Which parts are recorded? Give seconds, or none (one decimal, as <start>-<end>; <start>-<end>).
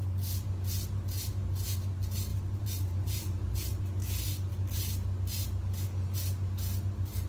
0.0-2.3; 3.8-7.3